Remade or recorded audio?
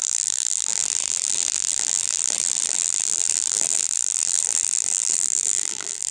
remade